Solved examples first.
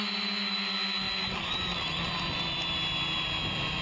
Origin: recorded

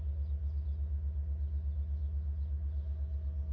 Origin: recorded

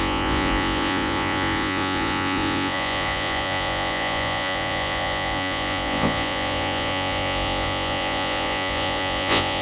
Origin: remade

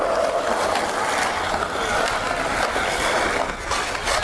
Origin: recorded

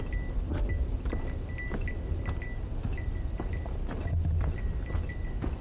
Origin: recorded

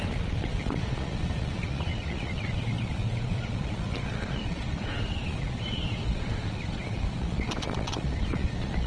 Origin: remade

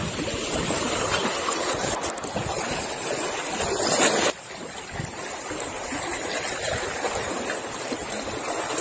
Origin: recorded